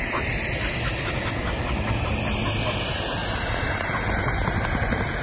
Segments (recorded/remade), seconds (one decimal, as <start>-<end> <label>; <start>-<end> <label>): 0.0-3.2 recorded; 3.2-4.6 remade; 4.6-5.2 recorded